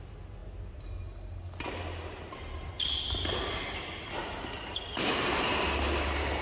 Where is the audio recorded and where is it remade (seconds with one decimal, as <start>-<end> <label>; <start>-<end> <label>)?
0.0-6.4 recorded